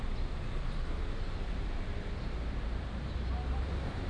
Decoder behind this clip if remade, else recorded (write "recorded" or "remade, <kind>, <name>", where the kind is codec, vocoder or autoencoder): recorded